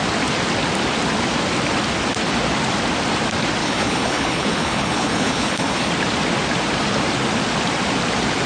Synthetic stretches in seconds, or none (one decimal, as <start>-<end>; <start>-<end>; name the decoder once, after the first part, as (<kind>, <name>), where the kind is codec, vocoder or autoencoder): 3.6-5.9 (codec, HILCodec)